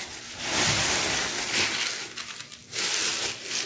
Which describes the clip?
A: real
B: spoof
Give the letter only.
A